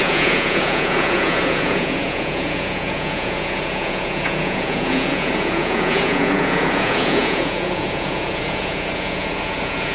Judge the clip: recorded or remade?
remade